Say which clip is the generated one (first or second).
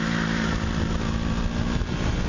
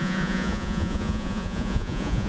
second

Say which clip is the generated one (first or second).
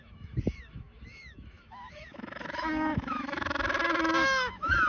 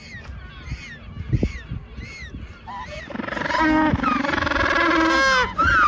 first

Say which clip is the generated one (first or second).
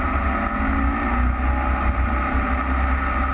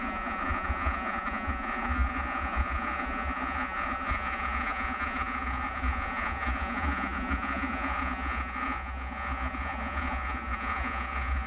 second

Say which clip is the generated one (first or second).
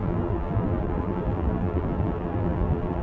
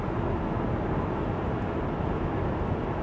first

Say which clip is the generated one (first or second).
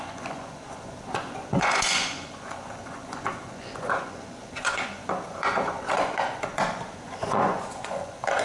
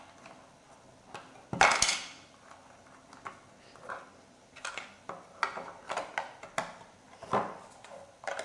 first